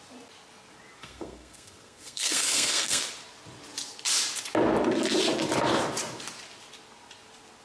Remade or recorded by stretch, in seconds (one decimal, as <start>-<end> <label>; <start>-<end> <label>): 0.0-1.0 recorded; 1.0-3.0 remade; 3.0-7.6 recorded